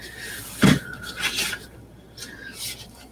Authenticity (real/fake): fake